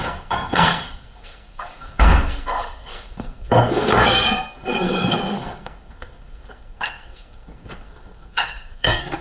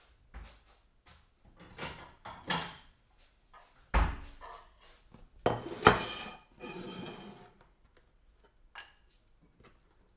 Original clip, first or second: second